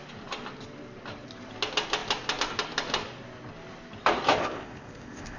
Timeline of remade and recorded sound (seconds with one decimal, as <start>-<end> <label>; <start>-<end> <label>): 0.0-4.4 recorded; 4.4-5.4 remade